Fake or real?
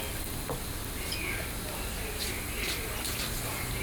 real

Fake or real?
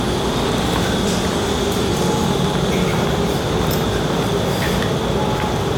real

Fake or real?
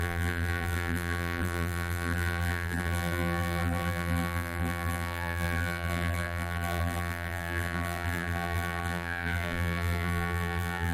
fake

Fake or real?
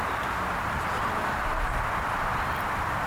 fake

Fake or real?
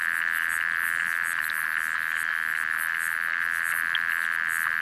real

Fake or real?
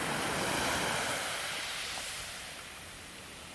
fake